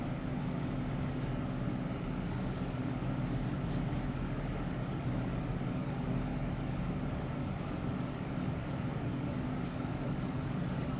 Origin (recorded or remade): remade